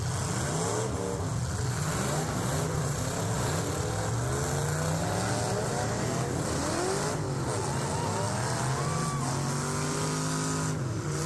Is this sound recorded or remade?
recorded